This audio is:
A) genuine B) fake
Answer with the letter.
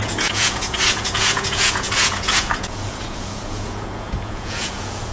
B